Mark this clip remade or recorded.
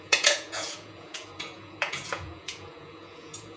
remade